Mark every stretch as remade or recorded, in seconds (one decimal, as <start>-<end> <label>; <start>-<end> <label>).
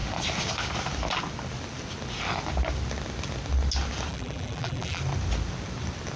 0.0-4.1 recorded; 4.1-5.0 remade; 5.0-6.2 recorded